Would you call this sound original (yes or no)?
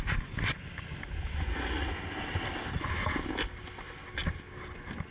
yes